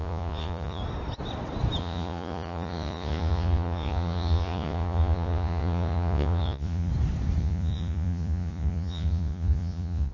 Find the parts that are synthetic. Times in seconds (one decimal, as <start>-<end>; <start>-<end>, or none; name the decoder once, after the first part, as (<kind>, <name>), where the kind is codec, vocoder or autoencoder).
0.0-0.8 (vocoder, Vocos); 1.8-6.9; 7.4-10.1